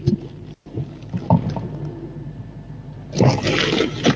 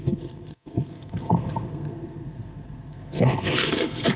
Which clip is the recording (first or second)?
first